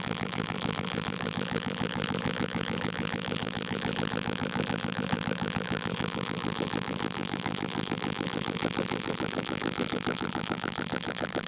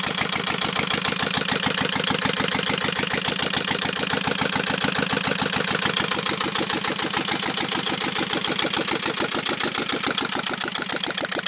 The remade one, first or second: first